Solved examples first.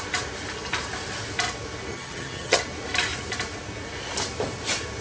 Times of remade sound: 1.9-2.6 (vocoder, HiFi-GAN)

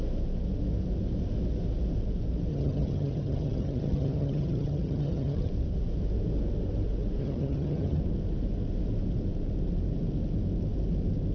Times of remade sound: 2.5-5.5 (vocoder, HiFi-GAN); 7.2-8.0

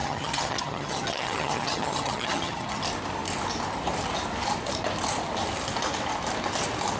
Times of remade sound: 0.0-2.8 (vocoder, HiFi-GAN)